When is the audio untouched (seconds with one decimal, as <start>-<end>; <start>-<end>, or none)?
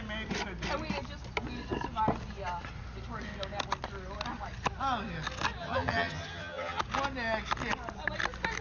0.0-5.6; 6.8-8.6